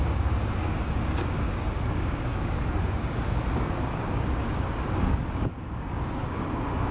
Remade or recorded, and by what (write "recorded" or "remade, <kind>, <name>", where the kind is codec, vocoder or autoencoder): remade, codec, DAC